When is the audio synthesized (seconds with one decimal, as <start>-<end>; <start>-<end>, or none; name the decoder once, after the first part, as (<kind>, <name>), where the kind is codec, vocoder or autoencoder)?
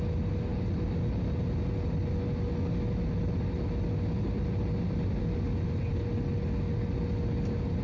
none